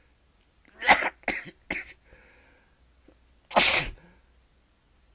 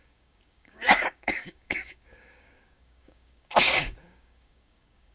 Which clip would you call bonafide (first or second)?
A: first